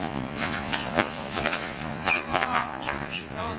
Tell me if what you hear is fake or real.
fake